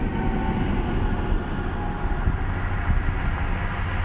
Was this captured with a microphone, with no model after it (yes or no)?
yes